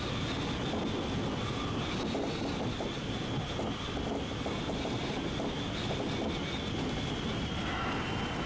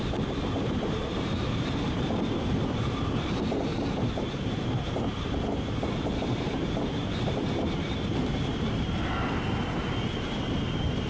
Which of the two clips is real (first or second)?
first